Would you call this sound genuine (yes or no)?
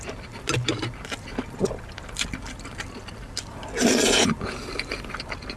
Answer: yes